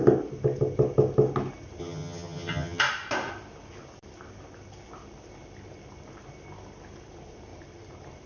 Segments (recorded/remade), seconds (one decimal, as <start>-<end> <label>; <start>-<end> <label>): 0.0-1.8 recorded; 1.8-2.8 remade; 2.8-8.3 recorded